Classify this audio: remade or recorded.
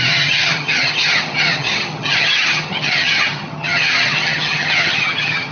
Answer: remade